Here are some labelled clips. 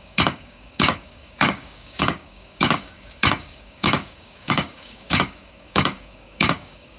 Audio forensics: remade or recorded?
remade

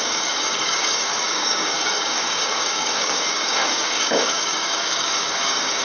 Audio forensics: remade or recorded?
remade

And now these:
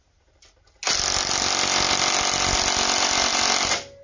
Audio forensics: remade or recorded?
recorded